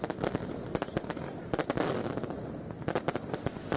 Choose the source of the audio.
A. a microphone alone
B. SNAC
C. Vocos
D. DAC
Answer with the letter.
A